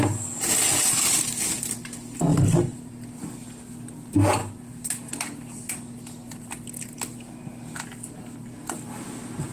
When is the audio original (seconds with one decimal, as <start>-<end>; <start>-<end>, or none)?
0.0-2.3; 2.9-4.4; 5.1-9.5